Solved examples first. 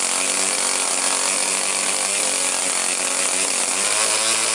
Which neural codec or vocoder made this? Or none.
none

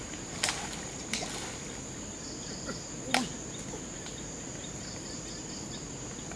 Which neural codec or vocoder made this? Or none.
none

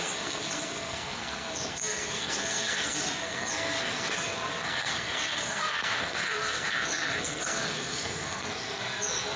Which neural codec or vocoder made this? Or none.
codec, SNAC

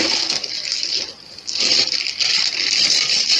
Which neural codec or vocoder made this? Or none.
none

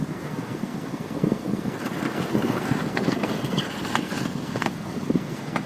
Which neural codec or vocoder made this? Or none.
codec, SNAC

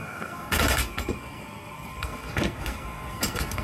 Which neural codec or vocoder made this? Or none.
codec, SNAC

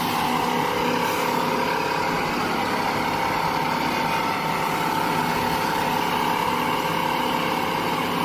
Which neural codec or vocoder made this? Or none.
none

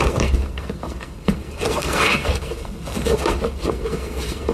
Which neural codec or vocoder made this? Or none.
codec, SNAC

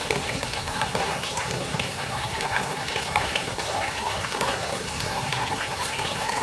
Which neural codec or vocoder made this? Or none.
codec, SNAC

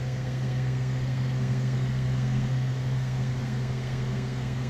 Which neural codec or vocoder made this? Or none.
codec, SNAC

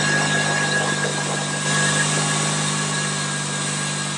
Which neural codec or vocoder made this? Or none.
none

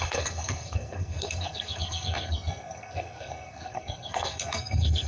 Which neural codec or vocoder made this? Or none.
codec, SNAC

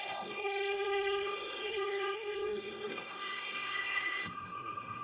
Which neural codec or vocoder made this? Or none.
codec, SNAC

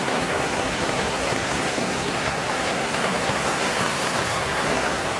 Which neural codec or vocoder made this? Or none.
codec, SNAC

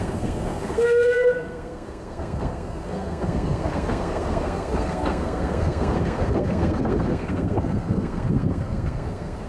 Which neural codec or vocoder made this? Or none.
codec, SNAC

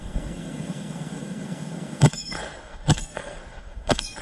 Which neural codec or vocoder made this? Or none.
codec, SNAC